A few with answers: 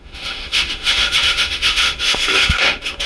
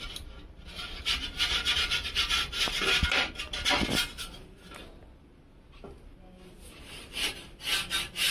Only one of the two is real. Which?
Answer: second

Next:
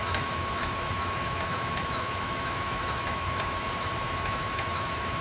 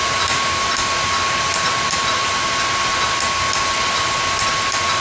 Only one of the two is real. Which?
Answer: second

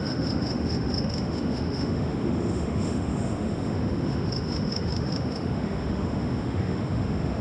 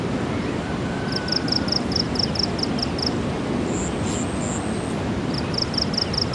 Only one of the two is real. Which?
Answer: second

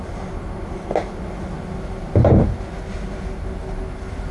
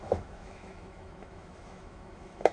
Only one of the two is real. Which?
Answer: first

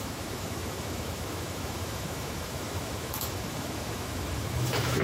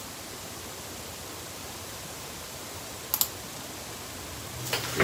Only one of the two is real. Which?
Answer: second